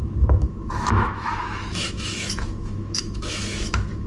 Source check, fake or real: fake